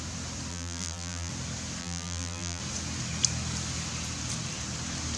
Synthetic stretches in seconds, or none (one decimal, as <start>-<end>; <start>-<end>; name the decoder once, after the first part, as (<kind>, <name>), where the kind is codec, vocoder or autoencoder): 0.5-1.3 (vocoder, BigVGAN v2); 1.8-2.6